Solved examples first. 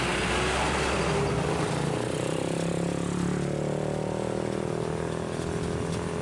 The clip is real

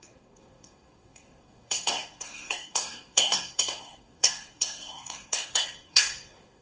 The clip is fake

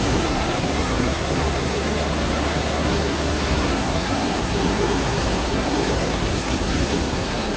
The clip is fake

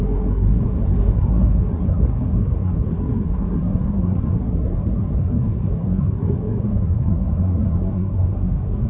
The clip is fake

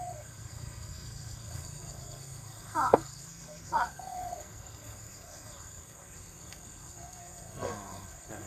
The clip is fake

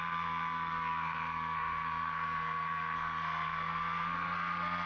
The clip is fake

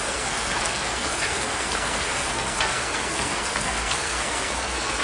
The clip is fake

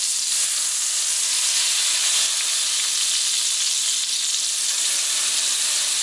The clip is real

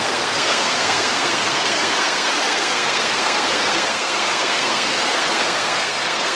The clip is fake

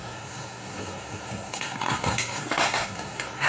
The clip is fake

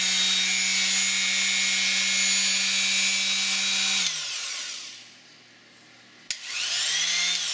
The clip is real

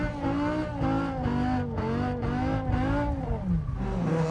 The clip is real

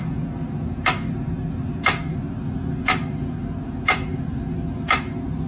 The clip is real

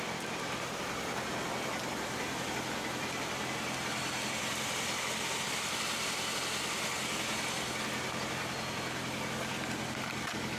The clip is real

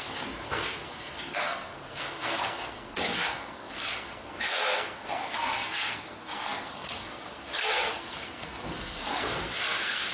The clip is fake